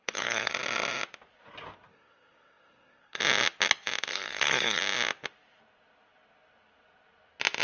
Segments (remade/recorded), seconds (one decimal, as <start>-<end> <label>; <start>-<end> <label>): 0.0-0.5 remade; 0.5-1.9 recorded; 1.9-3.2 remade; 3.2-4.1 recorded; 4.1-4.8 remade; 4.8-7.6 recorded